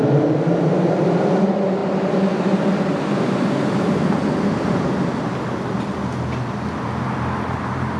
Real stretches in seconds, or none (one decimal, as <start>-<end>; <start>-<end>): 0.0-8.0